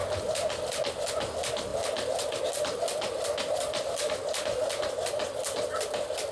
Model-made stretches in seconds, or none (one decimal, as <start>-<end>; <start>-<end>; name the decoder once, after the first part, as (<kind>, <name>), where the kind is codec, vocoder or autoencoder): none

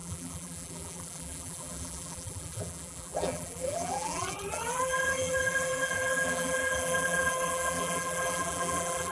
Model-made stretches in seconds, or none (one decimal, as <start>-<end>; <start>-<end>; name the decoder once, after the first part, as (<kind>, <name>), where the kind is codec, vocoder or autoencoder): 0.0-9.1 (vocoder, BigVGAN v2)

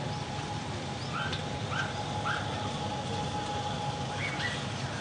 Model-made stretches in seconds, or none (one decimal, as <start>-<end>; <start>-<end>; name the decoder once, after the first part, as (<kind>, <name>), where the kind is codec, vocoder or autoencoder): none

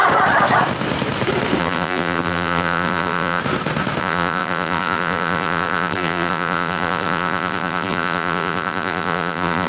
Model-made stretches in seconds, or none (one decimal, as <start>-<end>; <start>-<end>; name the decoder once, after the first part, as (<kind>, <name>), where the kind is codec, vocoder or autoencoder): 1.6-3.4 (vocoder, BigVGAN v2); 4.0-9.7